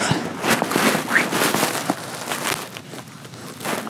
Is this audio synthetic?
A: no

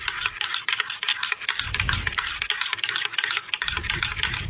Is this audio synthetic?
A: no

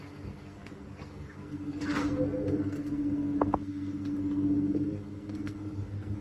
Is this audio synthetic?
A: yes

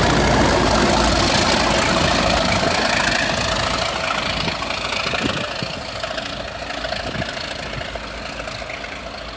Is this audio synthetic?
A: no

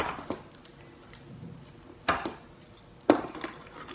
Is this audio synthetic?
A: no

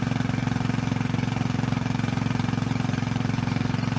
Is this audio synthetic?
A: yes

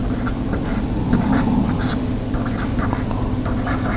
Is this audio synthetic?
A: no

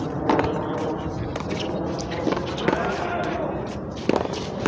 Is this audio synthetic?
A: no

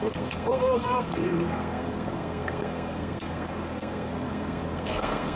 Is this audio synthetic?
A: yes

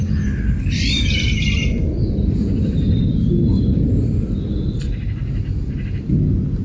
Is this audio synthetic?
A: no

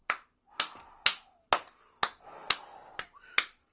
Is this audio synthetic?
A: no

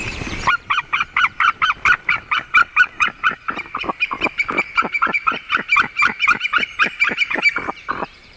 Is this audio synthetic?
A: yes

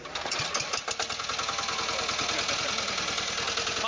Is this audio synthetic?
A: no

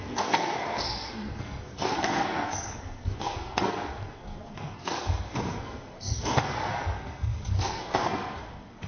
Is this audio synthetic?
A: yes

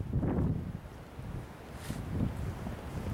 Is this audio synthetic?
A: no